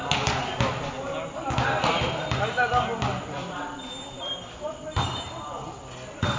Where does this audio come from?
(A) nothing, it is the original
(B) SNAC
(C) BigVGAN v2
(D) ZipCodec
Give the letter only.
A